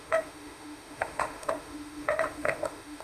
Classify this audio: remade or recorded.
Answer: remade